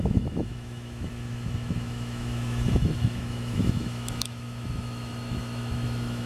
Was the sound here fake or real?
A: fake